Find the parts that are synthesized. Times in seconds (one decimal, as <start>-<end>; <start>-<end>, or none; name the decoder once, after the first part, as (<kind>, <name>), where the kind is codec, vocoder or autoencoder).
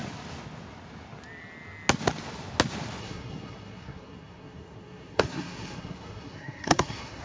3.0-7.2 (codec, SNAC)